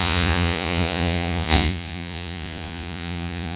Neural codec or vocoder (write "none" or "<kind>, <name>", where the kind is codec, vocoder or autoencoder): vocoder, Vocos